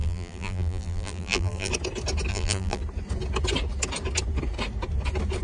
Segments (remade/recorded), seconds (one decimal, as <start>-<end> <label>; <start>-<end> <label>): 0.0-1.7 remade; 1.7-2.3 recorded; 2.3-2.8 remade; 2.8-5.4 recorded